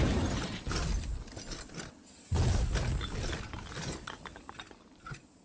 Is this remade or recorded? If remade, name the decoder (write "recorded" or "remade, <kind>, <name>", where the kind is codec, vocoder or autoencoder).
recorded